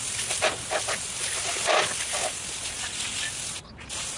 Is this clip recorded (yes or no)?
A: yes